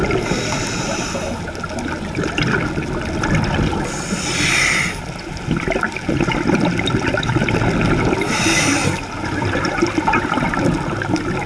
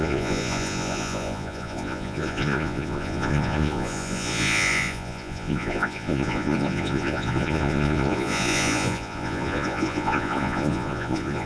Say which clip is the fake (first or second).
second